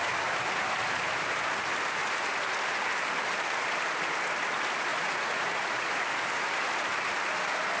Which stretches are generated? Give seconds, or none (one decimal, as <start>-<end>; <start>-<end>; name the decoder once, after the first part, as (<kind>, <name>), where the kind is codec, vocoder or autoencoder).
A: 4.9-6.1 (vocoder, Vocos)

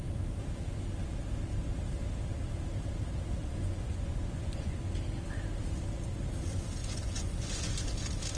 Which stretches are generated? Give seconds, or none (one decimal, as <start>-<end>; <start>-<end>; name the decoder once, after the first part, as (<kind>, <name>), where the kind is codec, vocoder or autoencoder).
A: 3.4-4.8 (vocoder, Vocos); 6.8-7.9

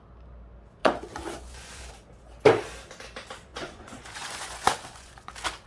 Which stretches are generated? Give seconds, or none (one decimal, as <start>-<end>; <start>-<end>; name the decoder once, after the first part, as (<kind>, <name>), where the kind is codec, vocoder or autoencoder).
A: 0.8-1.9 (vocoder, Vocos); 3.5-5.3